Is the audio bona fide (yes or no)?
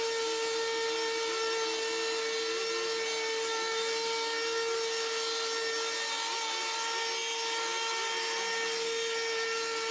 yes